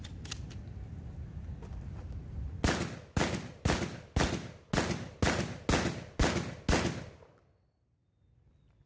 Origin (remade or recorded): recorded